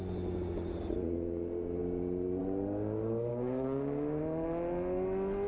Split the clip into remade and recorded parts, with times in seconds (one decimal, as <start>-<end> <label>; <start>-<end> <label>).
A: 0.0-3.3 recorded; 3.3-4.2 remade; 4.2-5.5 recorded